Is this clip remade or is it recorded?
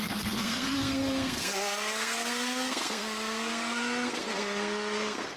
remade